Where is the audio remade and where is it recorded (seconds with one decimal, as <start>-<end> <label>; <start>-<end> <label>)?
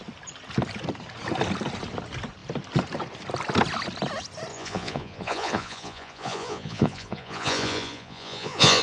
0.0-4.5 recorded; 4.5-8.8 remade